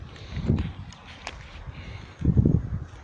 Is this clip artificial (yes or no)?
no